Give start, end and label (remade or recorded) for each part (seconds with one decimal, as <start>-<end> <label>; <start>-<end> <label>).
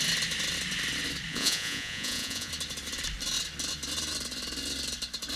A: 0.0-1.3 recorded; 1.3-2.5 remade; 2.5-5.4 recorded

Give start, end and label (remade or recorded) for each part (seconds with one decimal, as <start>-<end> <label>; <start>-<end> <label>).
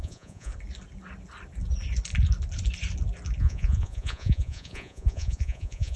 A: 0.0-0.5 remade; 0.5-3.4 recorded; 3.4-6.0 remade